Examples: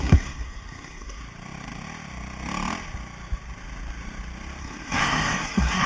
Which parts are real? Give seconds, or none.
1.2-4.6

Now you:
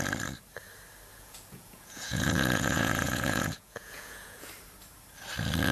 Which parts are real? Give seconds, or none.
0.0-1.1; 4.5-5.7

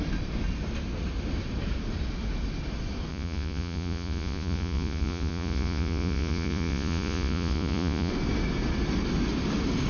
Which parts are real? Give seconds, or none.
0.0-3.1; 8.1-9.9

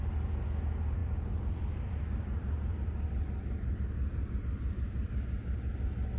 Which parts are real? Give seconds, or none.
0.0-1.0; 4.4-6.2

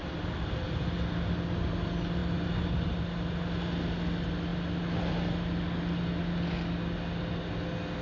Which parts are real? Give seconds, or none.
0.0-8.0

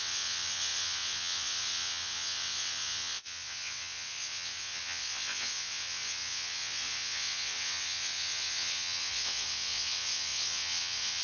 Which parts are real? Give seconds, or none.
none

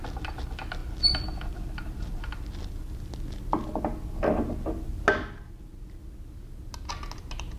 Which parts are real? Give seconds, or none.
0.0-7.6

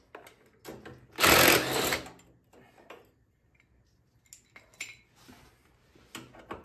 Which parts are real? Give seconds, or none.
0.0-6.6